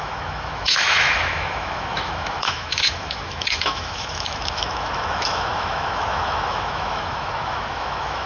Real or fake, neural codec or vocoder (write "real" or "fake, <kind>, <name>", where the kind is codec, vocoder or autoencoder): fake, autoencoder, DAC-VAE